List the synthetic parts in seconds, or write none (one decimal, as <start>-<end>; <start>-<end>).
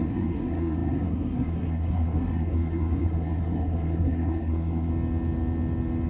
0.0-4.9